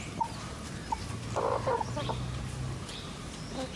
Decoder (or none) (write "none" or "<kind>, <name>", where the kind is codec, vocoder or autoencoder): none